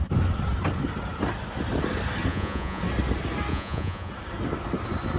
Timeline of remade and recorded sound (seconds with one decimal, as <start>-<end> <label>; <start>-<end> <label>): 0.0-2.3 recorded; 2.3-2.8 remade; 2.8-3.5 recorded; 3.5-4.1 remade; 4.1-5.2 recorded